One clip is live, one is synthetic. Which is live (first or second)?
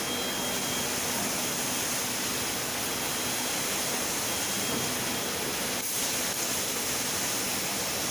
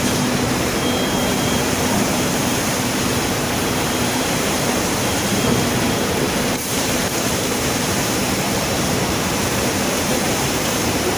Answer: first